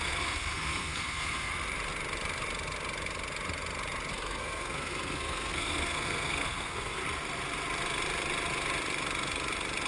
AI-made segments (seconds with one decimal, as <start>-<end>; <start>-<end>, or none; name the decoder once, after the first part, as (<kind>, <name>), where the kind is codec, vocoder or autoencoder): 0.0-1.5 (codec, SNAC); 4.1-7.0

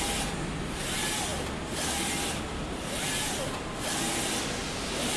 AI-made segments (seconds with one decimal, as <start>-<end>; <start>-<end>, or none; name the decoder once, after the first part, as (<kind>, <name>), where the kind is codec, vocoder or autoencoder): none

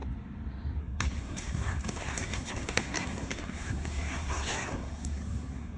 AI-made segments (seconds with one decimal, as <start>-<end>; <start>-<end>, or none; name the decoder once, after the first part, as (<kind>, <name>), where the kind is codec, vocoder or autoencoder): 0.8-5.8 (codec, SNAC)

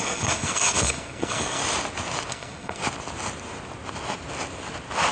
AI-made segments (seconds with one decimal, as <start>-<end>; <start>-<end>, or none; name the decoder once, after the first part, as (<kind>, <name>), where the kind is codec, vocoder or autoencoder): 0.0-1.6 (codec, SNAC); 2.3-2.8